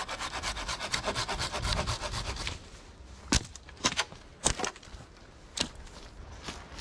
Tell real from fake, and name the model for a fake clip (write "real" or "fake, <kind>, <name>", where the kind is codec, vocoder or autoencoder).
real